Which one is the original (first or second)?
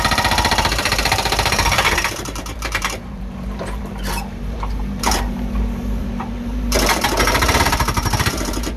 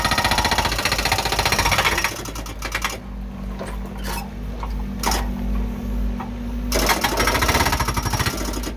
second